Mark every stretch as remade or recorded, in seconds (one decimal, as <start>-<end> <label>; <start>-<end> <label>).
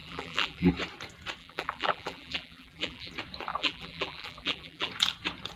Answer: 0.0-0.7 remade; 0.7-1.4 recorded; 1.4-3.1 remade; 3.1-3.5 recorded; 3.5-4.9 remade; 4.9-5.6 recorded